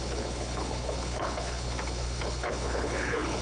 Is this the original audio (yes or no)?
no